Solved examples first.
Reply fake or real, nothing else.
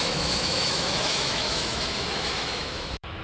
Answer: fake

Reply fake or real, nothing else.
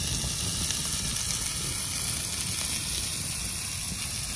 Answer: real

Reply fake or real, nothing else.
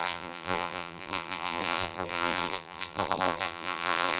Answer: fake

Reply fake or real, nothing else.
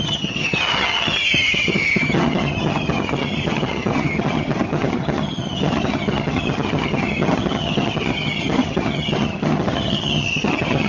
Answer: fake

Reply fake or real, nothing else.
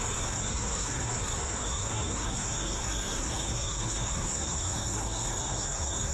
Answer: fake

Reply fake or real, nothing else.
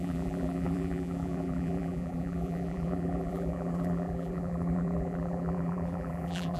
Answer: fake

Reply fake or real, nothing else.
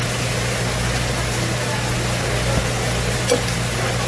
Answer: real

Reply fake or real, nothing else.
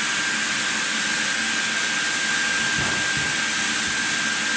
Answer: real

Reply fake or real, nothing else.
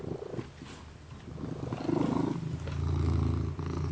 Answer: real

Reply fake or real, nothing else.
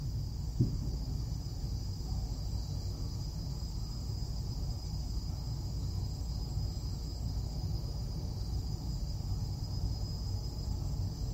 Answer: real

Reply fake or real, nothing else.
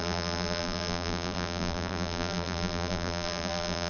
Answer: fake